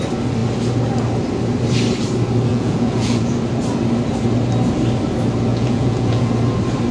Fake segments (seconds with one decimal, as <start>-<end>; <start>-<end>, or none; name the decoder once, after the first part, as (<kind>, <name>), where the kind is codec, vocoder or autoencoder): 2.5-3.3 (vocoder, Vocos); 5.5-6.3

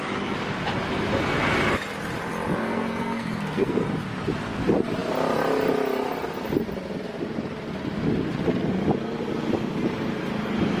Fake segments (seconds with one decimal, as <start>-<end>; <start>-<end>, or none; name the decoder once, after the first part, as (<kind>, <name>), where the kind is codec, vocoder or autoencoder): 2.6-3.8 (codec, SNAC)

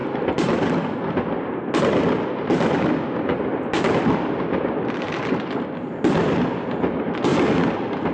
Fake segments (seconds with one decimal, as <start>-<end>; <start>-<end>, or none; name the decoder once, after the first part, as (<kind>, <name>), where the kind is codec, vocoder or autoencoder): none

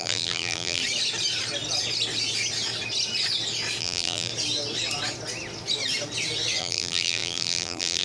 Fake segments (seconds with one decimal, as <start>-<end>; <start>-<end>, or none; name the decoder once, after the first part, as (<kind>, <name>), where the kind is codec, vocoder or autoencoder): 0.0-0.8 (vocoder, BigVGAN v2); 3.8-4.3; 6.6-8.0

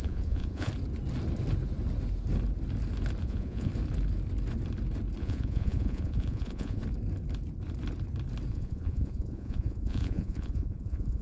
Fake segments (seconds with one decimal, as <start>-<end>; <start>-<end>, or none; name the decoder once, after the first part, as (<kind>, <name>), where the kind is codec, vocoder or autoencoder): 0.0-0.7 (vocoder, Vocos); 3.2-3.7; 5.2-6.8; 8.5-11.2

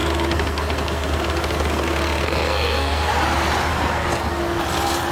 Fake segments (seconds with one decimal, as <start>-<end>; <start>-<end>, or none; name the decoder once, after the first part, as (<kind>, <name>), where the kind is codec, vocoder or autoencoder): 0.0-3.1 (codec, SNAC); 3.7-4.4

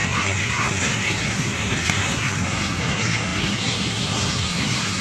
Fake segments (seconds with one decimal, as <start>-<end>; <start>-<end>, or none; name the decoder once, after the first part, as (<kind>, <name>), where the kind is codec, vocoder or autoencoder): 0.0-5.0 (codec, SNAC)

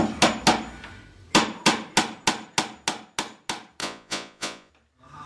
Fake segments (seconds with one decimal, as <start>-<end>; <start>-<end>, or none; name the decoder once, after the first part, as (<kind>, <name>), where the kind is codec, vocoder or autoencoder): 3.8-4.7 (vocoder, Vocos)